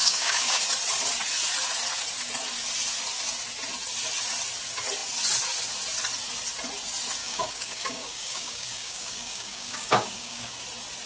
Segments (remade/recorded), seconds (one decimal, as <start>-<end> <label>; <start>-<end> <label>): 0.0-0.6 remade; 0.6-7.2 recorded; 7.2-10.6 remade; 10.6-11.1 recorded